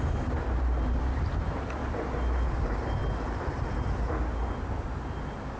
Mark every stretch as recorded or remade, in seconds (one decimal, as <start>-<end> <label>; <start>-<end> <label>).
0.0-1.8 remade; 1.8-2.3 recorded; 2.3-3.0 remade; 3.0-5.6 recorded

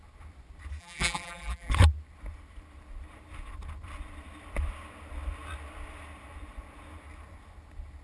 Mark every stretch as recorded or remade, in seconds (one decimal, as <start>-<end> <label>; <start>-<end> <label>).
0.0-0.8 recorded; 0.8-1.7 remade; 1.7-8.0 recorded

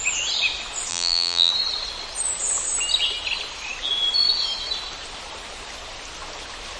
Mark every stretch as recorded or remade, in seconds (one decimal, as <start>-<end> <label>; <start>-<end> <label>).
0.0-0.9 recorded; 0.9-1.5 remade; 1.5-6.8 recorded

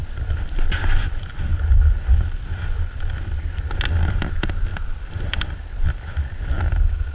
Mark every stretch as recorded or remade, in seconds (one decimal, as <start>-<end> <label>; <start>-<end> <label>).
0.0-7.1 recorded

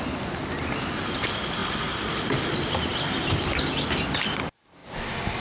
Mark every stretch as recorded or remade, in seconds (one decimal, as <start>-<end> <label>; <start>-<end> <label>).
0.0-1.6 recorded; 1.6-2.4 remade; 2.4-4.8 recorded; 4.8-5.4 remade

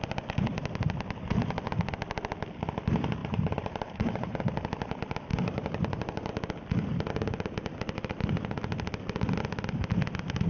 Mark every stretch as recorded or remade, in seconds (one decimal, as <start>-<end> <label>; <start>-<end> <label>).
0.0-3.2 recorded; 3.2-4.4 remade; 4.4-5.3 recorded; 5.3-6.3 remade; 6.3-10.5 recorded